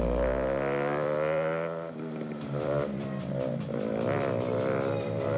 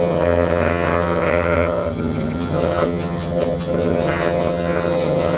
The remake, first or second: second